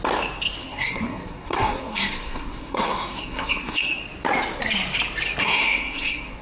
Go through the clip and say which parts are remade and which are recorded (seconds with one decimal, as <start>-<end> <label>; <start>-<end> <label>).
0.0-0.6 recorded; 0.6-4.0 remade; 4.0-5.4 recorded; 5.4-6.4 remade